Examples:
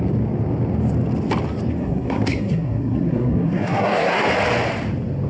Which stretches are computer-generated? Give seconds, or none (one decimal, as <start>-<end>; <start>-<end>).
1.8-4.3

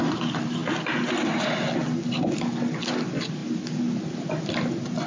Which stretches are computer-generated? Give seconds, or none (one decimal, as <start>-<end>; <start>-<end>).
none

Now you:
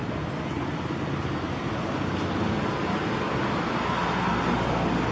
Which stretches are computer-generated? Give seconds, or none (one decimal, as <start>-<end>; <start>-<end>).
none